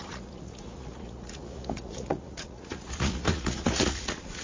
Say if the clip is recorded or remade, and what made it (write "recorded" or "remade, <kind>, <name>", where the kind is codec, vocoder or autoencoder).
remade, vocoder, Vocos